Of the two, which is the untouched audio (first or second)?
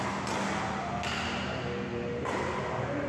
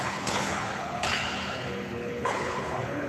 first